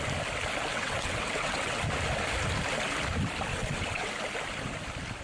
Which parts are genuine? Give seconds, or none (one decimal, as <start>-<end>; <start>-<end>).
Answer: 0.0-0.7; 1.8-3.5; 4.1-5.2